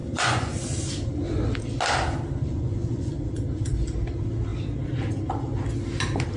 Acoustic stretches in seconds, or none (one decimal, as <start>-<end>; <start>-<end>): 0.5-2.5; 3.1-6.4